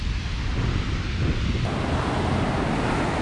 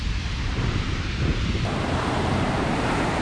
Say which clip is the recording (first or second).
first